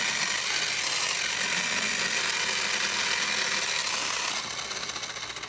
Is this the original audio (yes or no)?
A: yes